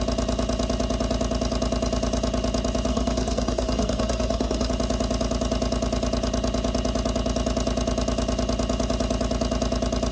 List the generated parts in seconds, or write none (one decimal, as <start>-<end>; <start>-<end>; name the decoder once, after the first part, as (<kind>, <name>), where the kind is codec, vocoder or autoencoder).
2.9-4.7 (codec, SNAC)